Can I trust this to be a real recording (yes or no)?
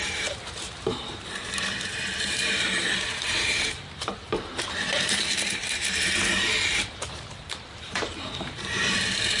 no